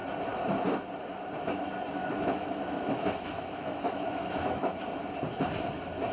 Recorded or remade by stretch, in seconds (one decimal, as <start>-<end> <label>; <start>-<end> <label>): 0.0-2.0 recorded; 2.0-4.8 remade; 4.8-6.1 recorded